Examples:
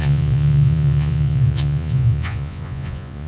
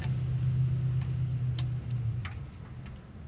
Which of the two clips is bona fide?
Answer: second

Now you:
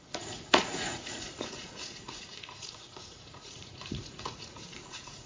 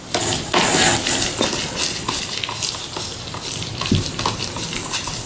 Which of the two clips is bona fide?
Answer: second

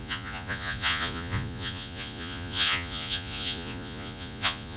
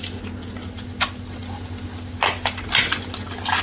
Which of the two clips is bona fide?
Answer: second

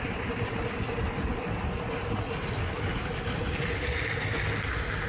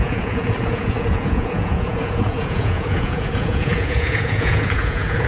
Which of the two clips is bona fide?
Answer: first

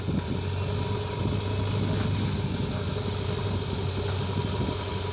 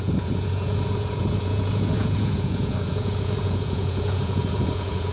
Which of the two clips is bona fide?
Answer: first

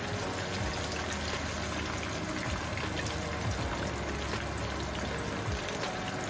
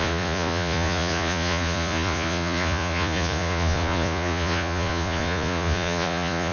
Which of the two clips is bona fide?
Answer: first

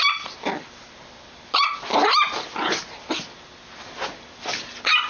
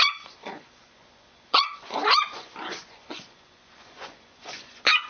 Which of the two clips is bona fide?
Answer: first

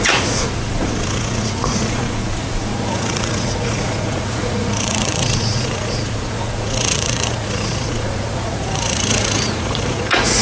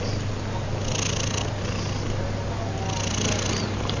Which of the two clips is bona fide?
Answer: second